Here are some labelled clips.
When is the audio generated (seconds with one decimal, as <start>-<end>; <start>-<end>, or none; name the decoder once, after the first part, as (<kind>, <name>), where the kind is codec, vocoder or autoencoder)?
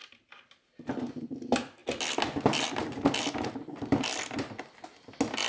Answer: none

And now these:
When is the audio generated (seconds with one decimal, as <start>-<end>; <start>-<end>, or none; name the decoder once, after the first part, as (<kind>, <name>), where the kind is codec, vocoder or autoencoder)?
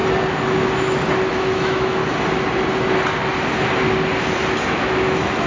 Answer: 1.3-2.0 (autoencoder, DAC-VAE); 4.7-5.5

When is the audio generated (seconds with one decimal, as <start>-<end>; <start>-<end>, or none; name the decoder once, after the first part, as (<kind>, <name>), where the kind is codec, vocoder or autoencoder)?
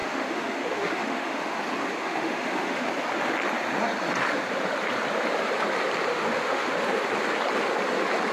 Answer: 0.0-1.6 (autoencoder, DAC-VAE); 2.0-2.9; 6.1-6.7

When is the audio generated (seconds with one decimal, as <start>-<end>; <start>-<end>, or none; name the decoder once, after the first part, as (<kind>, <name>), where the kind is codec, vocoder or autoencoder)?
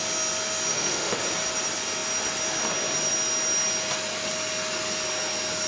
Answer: 0.7-1.2 (autoencoder, DAC-VAE)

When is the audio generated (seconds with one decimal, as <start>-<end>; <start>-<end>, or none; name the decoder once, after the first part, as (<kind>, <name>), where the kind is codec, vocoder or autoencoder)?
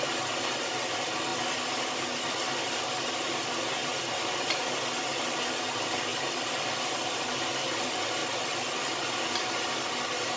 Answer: none